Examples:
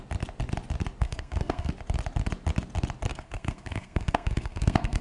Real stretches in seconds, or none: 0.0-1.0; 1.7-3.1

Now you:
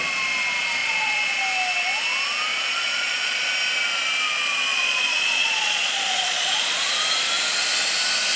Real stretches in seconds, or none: 0.0-0.8; 1.4-2.5; 3.5-4.7; 6.9-8.4

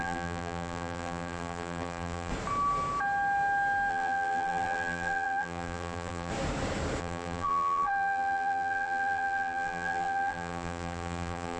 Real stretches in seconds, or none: 2.3-3.9; 6.3-7.0